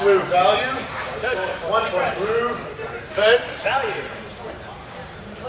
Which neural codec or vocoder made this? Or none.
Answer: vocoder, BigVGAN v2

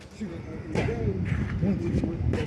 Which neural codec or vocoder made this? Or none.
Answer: none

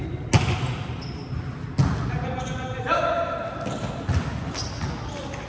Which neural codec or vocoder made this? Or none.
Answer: none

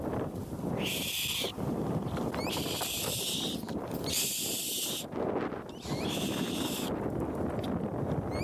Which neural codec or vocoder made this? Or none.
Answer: none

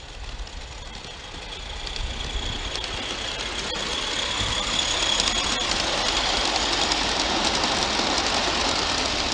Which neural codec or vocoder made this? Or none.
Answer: none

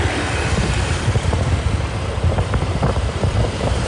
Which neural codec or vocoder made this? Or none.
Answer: vocoder, BigVGAN v2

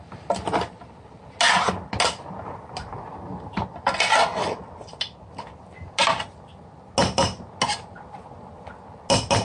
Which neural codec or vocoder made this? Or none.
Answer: none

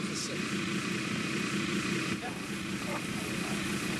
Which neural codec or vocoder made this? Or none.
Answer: vocoder, BigVGAN v2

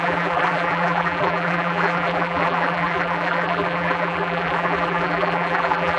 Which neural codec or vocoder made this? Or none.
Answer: vocoder, BigVGAN v2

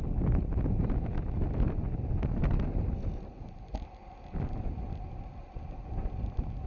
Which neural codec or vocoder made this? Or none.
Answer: none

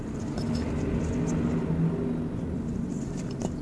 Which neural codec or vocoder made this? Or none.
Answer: none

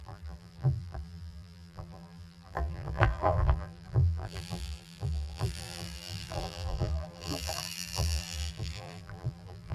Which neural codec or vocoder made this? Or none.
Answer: vocoder, BigVGAN v2